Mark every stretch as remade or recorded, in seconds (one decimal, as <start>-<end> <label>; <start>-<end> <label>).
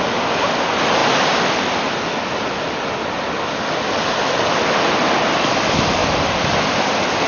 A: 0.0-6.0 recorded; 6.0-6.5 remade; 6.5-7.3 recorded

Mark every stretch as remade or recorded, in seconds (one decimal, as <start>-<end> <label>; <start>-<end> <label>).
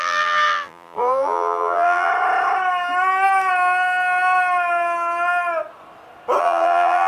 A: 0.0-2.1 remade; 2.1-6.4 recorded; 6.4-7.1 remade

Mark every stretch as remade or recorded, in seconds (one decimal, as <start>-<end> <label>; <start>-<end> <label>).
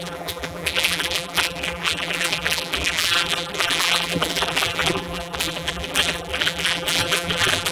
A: 0.0-7.7 remade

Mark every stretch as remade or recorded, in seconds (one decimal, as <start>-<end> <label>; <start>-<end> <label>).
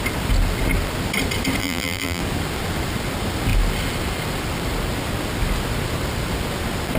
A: 0.0-1.6 recorded; 1.6-2.2 remade; 2.2-7.0 recorded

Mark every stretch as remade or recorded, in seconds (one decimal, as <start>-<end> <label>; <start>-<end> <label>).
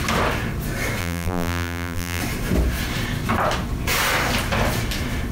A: 0.0-1.0 recorded; 1.0-2.2 remade; 2.2-5.3 recorded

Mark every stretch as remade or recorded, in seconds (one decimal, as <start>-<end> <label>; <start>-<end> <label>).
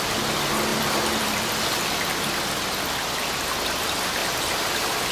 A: 0.0-0.7 recorded; 0.7-1.5 remade; 1.5-4.2 recorded; 4.2-5.1 remade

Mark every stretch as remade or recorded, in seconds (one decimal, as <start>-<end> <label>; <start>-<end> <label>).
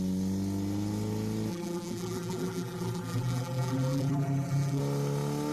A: 0.0-1.5 recorded; 1.5-4.8 remade; 4.8-5.5 recorded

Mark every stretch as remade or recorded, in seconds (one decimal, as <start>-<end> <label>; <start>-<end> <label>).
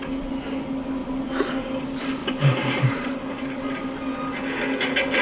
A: 0.0-1.0 recorded; 1.0-1.8 remade; 1.8-2.2 recorded; 2.2-3.3 remade; 3.3-5.2 recorded